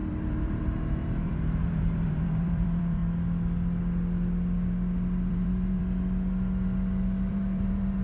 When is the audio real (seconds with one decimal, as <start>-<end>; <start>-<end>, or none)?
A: 3.0-5.3; 5.8-7.3